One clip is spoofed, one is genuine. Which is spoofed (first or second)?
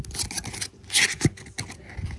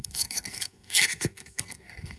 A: second